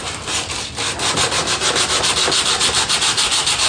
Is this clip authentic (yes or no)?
yes